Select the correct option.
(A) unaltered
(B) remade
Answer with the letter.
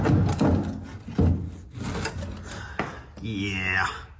A